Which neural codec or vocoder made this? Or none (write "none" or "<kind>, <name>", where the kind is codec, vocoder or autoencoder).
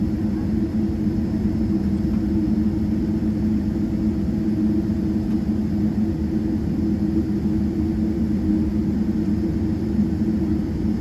none